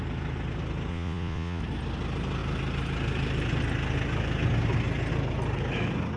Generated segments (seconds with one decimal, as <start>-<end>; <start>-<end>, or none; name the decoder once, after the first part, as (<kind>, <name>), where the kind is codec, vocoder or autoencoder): 0.9-1.6 (vocoder, Vocos)